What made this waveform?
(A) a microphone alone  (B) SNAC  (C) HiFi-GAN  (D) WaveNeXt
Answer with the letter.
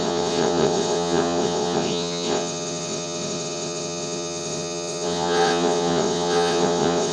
D